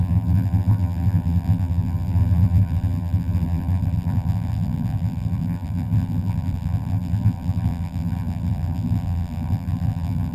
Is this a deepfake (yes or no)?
yes